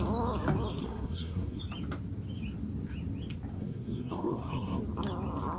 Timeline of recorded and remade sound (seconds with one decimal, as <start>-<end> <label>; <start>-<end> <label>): 0.0-0.8 recorded; 0.8-1.6 remade; 1.6-3.5 recorded; 3.5-4.8 remade; 4.8-5.6 recorded